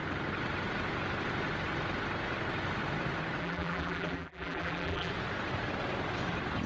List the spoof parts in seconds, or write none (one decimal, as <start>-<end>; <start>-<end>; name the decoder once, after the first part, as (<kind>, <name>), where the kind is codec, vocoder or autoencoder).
3.4-5.1 (vocoder, BigVGAN v2)